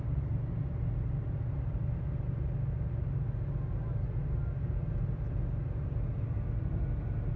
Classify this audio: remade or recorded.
recorded